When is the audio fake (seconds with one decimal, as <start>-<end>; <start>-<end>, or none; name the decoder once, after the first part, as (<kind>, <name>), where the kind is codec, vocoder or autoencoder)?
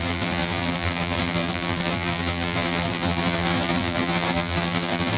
0.0-5.2 (vocoder, BigVGAN v2)